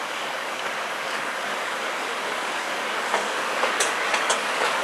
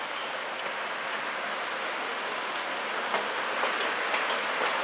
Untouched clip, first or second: second